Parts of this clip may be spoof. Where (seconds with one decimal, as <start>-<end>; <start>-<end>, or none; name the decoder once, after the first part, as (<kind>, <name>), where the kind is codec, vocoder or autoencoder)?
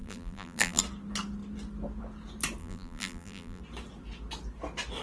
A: 0.0-0.8 (vocoder, BigVGAN v2); 2.6-3.6